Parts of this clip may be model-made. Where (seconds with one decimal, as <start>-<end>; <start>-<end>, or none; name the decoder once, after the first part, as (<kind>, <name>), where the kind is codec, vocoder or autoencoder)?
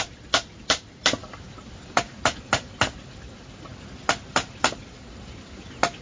none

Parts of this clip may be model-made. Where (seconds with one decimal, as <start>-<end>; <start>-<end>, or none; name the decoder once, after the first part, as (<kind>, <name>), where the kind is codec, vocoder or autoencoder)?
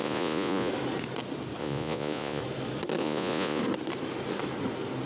0.0-0.7 (vocoder, Vocos); 1.6-2.4; 3.0-3.6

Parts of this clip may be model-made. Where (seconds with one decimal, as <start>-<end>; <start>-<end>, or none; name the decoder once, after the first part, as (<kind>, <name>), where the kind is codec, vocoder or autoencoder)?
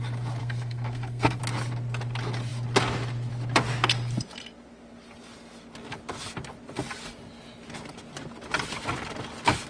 0.4-1.4 (codec, SNAC)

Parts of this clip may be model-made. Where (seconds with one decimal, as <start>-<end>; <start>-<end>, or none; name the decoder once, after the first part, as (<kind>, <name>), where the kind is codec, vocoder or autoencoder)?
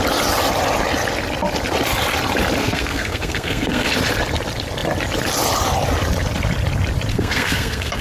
2.6-3.9 (codec, SNAC); 7.1-8.0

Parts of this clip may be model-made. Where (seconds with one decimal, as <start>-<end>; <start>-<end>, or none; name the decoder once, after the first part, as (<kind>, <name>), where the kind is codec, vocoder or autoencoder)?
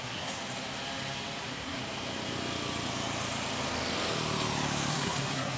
0.0-0.4 (codec, SNAC); 1.4-1.8; 4.9-5.6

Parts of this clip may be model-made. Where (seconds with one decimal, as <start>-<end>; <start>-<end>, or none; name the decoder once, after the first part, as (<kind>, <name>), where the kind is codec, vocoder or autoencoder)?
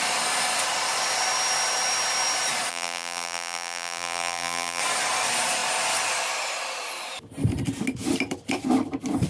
2.7-4.8 (vocoder, BigVGAN v2)